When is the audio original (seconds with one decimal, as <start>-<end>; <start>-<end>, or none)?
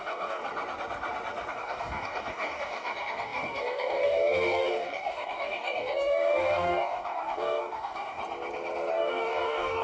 0.4-1.5; 8.2-8.9